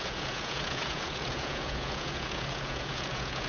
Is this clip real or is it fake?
fake